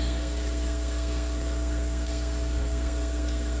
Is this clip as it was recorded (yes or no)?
no